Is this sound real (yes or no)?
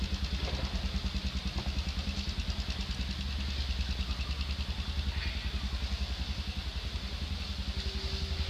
yes